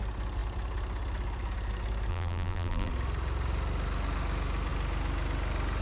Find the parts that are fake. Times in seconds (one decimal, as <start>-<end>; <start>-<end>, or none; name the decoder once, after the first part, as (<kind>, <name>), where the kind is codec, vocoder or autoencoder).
2.1-2.9 (vocoder, BigVGAN v2)

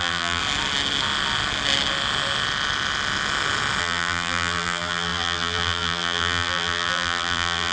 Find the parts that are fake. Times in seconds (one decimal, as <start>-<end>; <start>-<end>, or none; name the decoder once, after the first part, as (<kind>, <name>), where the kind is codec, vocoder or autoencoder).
0.0-0.4 (vocoder, BigVGAN v2); 3.8-7.7

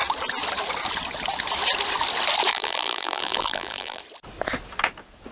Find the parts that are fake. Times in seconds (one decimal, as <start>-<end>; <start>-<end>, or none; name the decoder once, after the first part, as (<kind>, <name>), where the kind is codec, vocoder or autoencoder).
2.5-4.0 (vocoder, BigVGAN v2)

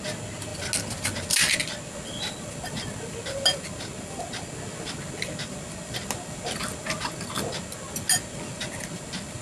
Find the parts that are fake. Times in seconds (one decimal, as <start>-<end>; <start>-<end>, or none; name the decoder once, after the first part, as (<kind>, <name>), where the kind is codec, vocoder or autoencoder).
none